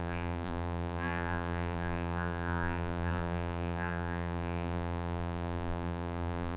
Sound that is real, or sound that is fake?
fake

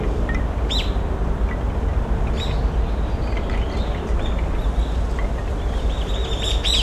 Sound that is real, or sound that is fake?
real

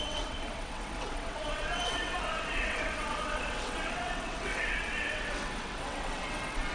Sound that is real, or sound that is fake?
fake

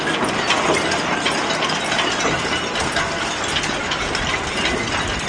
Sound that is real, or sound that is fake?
real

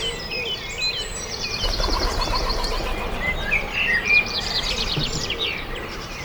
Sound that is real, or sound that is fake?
real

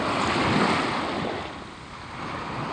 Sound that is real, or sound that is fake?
real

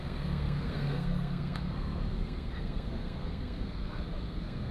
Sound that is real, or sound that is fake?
fake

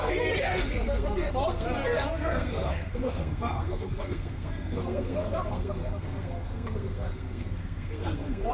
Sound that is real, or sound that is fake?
fake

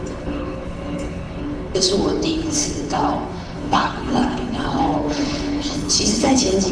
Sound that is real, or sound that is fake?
fake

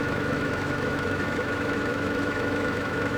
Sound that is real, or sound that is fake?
fake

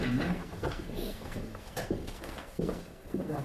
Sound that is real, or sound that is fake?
fake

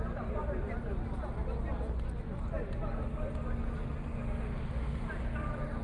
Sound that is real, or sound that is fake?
real